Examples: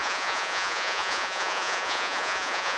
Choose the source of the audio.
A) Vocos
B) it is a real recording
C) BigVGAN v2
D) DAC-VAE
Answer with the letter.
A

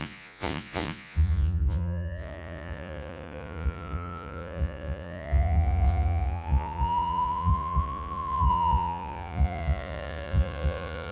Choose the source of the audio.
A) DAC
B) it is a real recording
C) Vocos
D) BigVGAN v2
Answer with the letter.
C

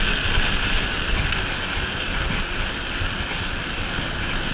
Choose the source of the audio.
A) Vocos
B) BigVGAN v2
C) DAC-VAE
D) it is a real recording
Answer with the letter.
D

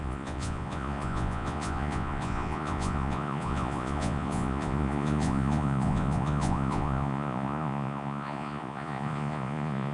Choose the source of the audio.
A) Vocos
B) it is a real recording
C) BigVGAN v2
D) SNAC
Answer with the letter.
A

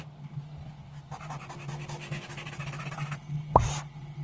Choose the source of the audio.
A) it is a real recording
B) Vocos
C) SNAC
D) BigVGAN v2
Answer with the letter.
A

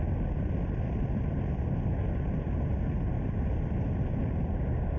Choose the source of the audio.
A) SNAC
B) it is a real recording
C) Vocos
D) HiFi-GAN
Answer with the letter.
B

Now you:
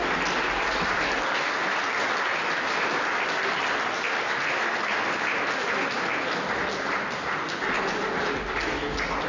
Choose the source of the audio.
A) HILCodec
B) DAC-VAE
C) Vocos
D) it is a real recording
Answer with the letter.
D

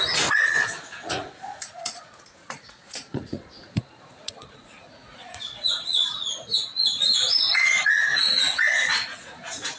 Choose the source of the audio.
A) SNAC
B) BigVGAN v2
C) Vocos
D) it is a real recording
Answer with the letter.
C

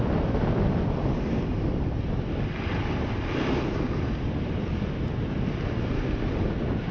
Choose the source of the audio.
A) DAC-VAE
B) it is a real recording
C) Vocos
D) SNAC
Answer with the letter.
B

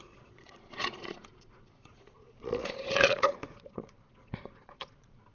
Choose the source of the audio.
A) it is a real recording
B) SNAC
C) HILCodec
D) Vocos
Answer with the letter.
D